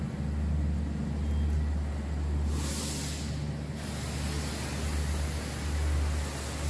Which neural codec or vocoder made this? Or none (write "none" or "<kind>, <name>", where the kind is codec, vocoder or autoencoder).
none